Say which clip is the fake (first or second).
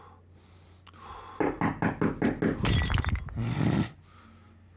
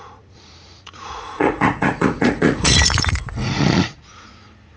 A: second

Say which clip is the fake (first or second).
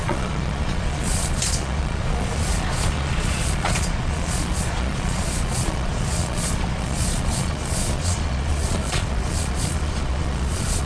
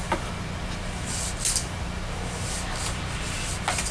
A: first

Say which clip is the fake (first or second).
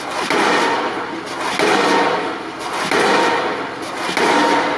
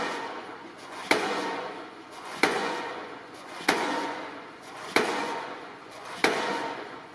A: second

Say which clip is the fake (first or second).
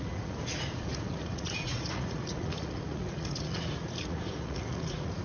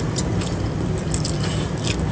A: first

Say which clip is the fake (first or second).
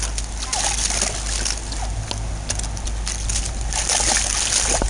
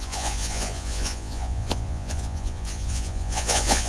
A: second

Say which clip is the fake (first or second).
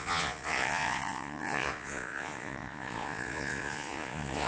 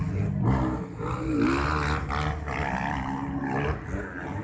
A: first